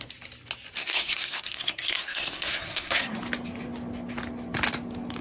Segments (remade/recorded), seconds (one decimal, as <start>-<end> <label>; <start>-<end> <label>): 0.0-0.8 recorded; 0.8-3.2 remade; 3.2-5.2 recorded